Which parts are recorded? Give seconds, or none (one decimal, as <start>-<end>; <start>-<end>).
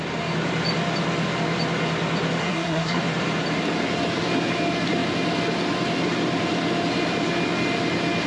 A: 0.0-2.4; 3.0-8.3